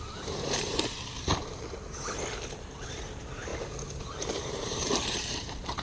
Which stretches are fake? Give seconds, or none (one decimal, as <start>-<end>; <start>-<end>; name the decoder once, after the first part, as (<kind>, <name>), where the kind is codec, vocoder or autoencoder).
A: 0.0-1.3 (vocoder, BigVGAN v2); 2.9-3.5; 4.0-5.8